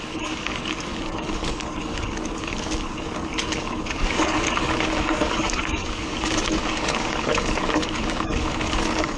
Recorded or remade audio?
remade